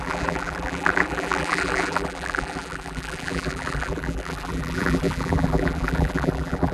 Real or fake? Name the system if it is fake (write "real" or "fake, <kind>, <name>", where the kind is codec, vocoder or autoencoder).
fake, vocoder, BigVGAN v2